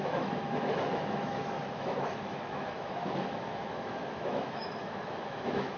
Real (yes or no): no